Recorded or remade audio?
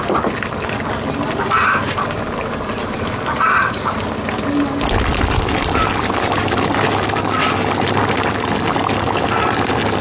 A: recorded